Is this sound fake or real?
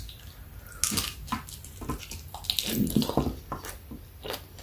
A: real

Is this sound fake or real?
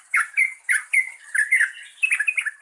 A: real